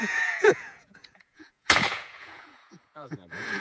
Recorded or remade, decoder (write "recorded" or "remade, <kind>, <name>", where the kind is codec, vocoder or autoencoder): remade, vocoder, Vocos